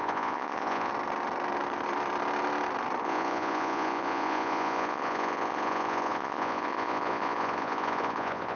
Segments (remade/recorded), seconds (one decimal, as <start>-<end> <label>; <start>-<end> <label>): 0.0-0.9 remade; 0.9-3.0 recorded; 3.0-8.6 remade